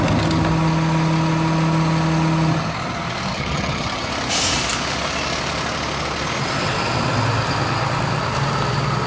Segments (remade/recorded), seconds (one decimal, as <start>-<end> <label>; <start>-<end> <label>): 0.0-3.3 recorded; 3.3-4.1 remade; 4.1-9.1 recorded